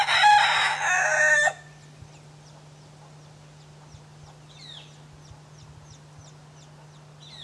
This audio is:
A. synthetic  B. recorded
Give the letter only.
B